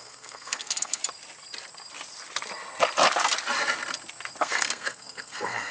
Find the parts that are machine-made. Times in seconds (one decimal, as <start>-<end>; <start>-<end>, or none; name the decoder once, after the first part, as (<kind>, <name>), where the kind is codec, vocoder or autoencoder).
0.0-1.0 (codec, SNAC); 4.4-5.7